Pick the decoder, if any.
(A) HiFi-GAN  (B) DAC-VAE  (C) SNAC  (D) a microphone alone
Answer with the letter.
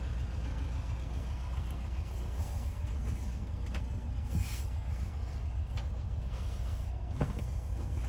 C